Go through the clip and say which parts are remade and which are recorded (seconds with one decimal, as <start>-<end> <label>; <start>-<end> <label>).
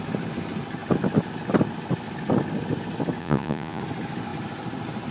0.0-3.2 recorded; 3.2-3.8 remade; 3.8-5.1 recorded